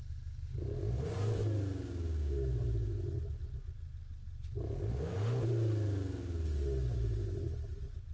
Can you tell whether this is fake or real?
real